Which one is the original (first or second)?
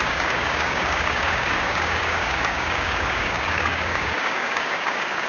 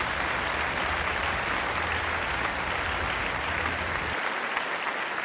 second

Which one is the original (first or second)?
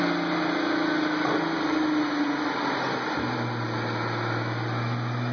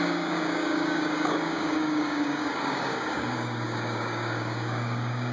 first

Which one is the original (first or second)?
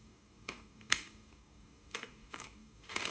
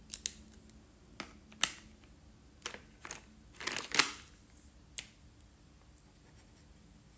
second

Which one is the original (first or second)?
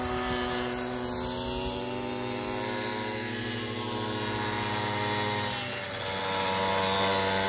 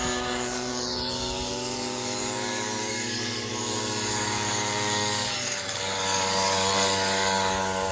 first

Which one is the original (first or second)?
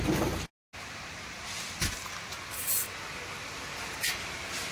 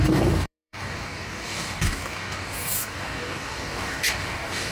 first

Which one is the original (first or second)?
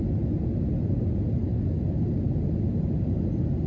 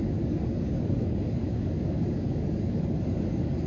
first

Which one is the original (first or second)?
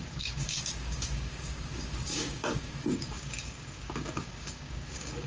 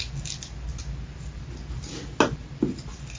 second